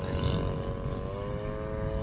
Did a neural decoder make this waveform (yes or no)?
no